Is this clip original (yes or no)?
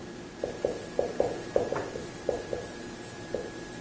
yes